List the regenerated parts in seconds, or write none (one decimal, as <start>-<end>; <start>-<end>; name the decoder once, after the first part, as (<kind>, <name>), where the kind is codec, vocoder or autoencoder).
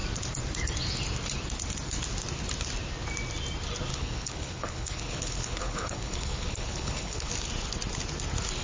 3.9-7.3 (codec, HILCodec)